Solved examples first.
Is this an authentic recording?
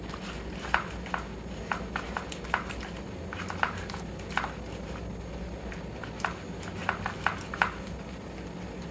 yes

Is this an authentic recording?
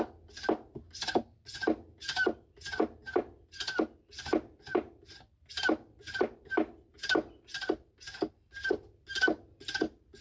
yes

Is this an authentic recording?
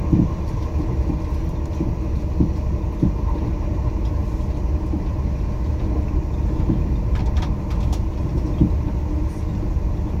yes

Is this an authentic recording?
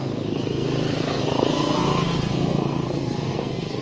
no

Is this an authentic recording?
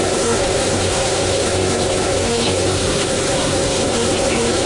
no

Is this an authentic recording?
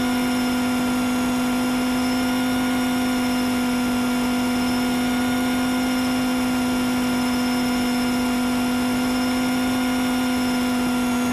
yes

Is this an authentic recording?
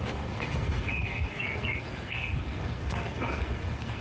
no